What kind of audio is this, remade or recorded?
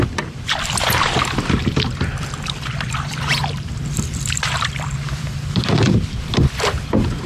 remade